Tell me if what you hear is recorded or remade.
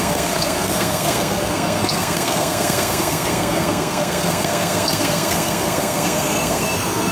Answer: remade